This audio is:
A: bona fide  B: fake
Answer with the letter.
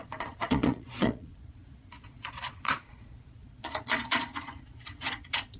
B